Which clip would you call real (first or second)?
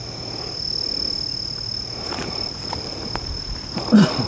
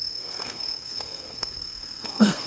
first